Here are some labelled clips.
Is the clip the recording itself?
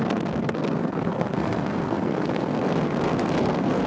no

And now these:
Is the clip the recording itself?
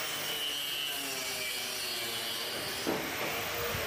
yes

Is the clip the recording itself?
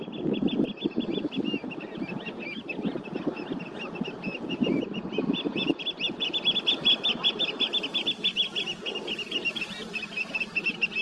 yes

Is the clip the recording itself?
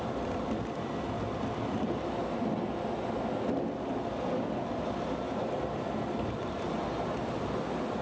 yes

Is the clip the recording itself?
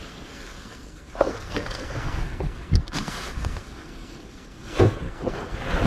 no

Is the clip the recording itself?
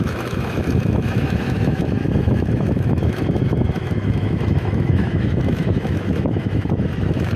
no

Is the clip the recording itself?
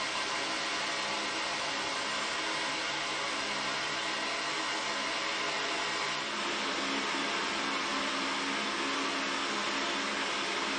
yes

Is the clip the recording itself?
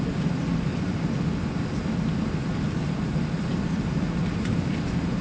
yes